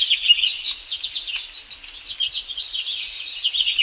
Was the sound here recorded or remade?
recorded